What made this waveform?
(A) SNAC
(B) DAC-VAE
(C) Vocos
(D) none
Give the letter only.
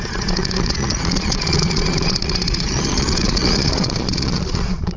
C